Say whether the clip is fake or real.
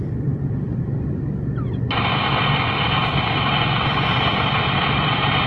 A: fake